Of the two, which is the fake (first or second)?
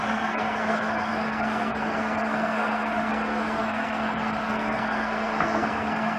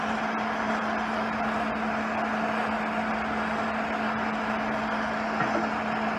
first